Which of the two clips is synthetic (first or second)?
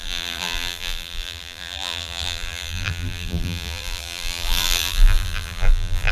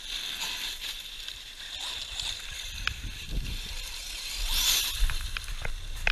first